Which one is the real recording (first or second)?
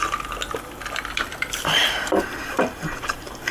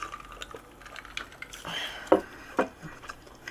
second